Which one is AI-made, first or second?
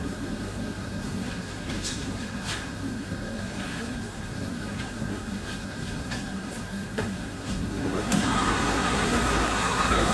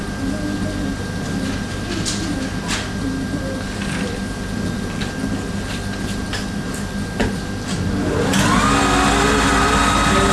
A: first